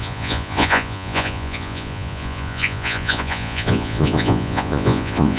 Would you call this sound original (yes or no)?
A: no